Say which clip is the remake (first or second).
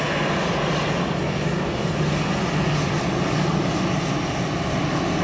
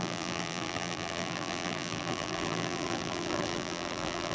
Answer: second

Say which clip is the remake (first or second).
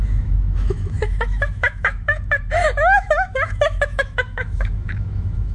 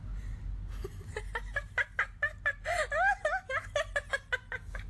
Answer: first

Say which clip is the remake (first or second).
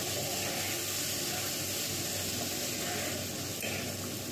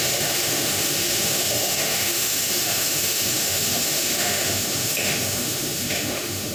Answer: second